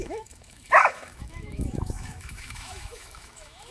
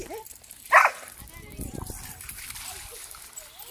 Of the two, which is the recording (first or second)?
second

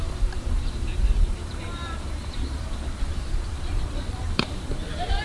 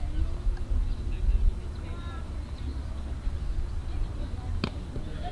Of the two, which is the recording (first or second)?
second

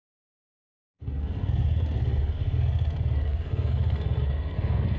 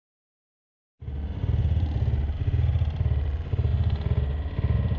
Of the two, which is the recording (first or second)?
second